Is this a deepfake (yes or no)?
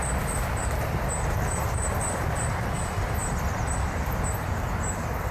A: yes